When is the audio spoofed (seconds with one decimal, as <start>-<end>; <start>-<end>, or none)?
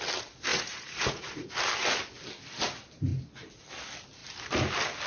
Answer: 0.5-1.5